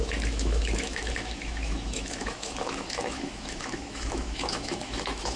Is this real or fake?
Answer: fake